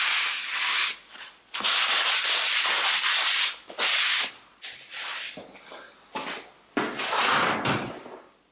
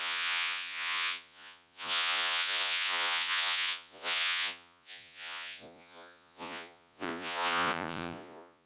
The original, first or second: first